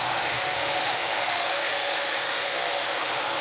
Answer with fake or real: fake